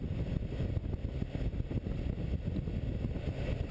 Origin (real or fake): real